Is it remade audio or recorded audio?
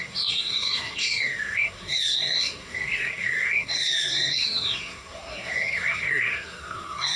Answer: remade